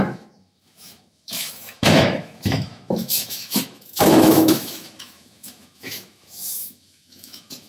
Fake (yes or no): yes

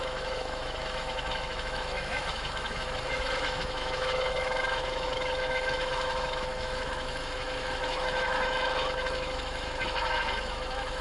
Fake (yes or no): yes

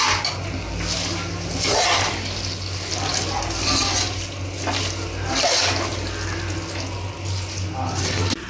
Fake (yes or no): no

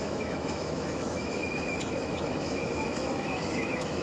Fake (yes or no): yes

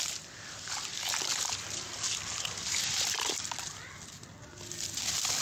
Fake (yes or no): no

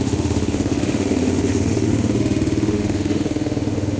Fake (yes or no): yes